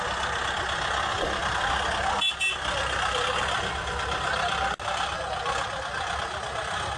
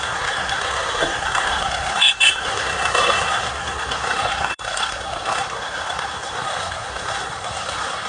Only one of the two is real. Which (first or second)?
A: first